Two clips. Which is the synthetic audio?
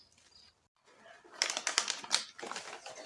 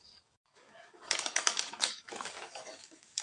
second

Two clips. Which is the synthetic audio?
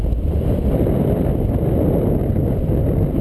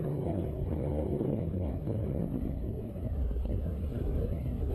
second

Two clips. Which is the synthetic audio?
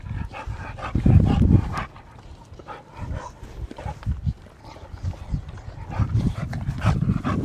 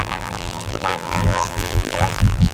second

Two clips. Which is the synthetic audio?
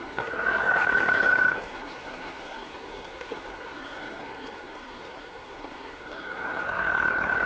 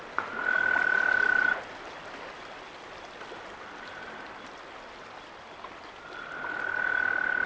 first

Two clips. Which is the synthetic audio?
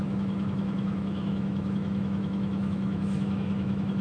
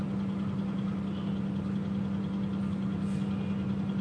first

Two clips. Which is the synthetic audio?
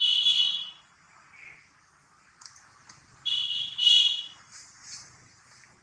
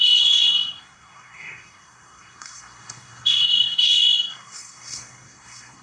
second